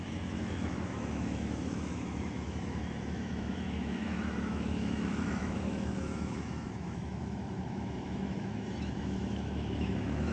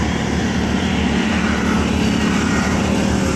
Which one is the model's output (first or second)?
first